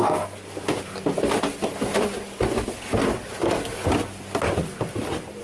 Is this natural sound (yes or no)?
yes